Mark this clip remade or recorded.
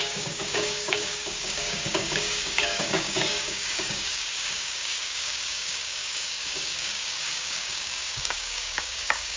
remade